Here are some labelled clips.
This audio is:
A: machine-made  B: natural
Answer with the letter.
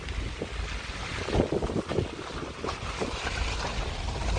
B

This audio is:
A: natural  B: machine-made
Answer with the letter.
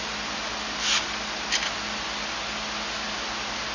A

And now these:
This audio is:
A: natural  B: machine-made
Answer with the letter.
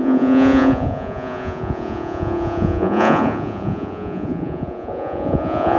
B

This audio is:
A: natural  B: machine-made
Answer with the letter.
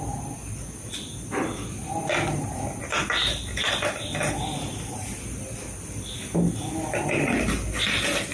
A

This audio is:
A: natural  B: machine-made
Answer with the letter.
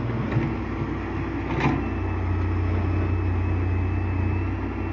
A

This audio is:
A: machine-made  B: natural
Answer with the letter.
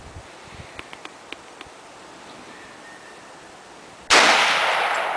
B